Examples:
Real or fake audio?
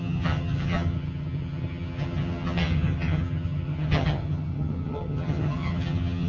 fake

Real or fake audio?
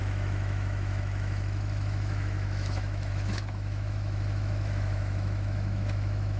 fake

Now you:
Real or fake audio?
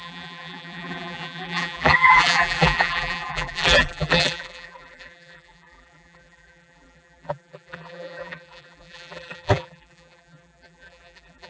fake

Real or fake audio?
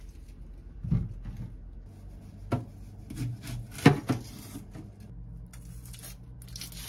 real